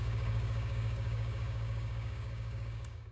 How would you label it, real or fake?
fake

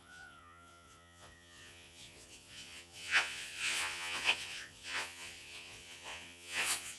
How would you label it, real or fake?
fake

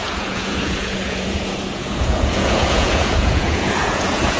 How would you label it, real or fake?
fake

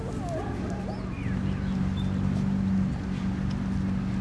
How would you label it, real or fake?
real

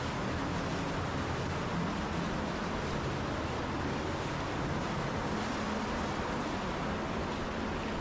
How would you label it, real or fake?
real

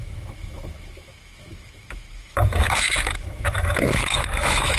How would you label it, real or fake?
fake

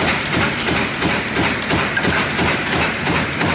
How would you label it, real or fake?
fake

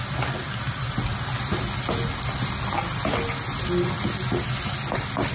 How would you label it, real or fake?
real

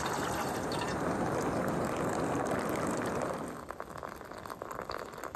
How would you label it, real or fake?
real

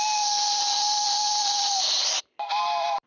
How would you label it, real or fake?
fake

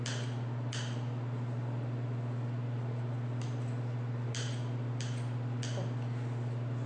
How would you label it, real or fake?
real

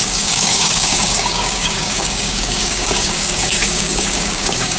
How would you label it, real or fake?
fake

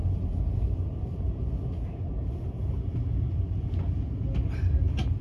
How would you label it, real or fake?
real